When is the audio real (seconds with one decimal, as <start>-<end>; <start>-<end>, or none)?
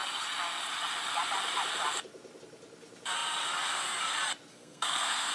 0.0-4.5